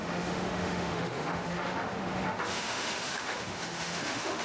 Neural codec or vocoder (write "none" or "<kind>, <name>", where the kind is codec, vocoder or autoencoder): autoencoder, DAC-VAE